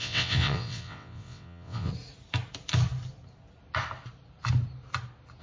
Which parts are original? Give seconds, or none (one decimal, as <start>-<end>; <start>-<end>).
1.9-5.4